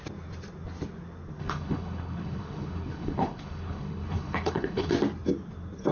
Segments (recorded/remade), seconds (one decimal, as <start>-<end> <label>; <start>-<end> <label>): 0.0-1.4 recorded; 1.4-4.9 remade; 4.9-5.9 recorded